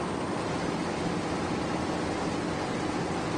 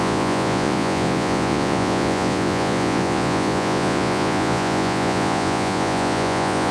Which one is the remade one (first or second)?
second